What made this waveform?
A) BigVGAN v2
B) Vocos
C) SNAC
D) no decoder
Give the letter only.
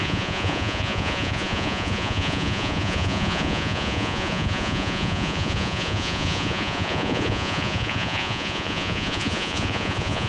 B